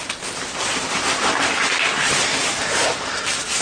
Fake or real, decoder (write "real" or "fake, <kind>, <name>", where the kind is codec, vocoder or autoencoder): real